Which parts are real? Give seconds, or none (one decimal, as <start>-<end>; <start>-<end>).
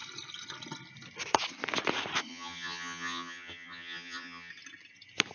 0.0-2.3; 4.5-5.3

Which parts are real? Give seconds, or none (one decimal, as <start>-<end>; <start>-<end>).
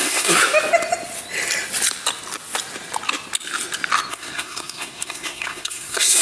0.4-4.1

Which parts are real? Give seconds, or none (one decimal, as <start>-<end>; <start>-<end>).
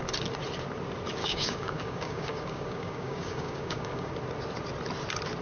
0.0-1.2; 4.1-5.4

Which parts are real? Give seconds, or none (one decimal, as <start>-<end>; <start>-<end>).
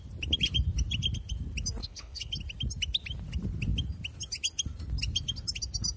0.0-1.8; 2.3-6.0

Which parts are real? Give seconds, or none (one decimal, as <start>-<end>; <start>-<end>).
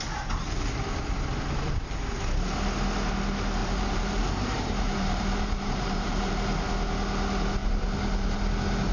0.0-3.6; 6.3-7.6; 8.4-8.9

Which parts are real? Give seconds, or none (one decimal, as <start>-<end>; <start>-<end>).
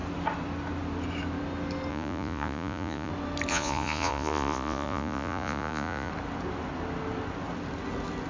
0.0-1.9; 3.1-3.5; 6.1-8.3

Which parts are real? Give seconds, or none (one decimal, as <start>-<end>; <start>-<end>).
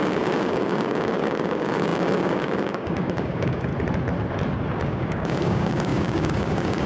3.7-4.7